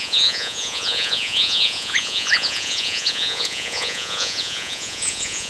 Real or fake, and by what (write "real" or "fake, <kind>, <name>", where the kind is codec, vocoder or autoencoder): fake, vocoder, Vocos